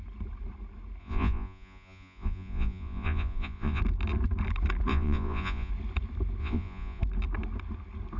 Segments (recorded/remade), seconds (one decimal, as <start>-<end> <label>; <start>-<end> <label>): 0.0-1.0 recorded; 1.0-3.8 remade; 3.8-4.9 recorded; 4.9-5.7 remade; 5.7-6.4 recorded; 6.4-7.0 remade; 7.0-8.2 recorded